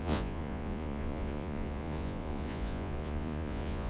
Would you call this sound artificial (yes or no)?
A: yes